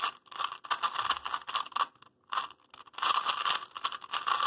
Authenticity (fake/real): real